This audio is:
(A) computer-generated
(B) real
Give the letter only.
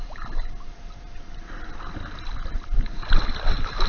B